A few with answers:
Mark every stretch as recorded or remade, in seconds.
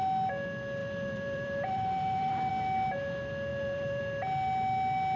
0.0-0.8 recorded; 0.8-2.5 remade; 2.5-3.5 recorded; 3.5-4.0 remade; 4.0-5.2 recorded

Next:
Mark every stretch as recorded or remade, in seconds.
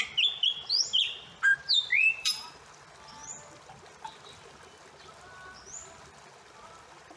0.0-1.5 recorded; 1.5-2.5 remade; 2.5-7.2 recorded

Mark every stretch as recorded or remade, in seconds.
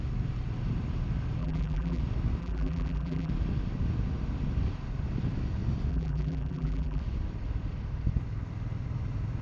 0.0-1.4 recorded; 1.4-2.0 remade; 2.0-2.4 recorded; 2.4-3.3 remade; 3.3-5.9 recorded; 5.9-7.0 remade; 7.0-9.4 recorded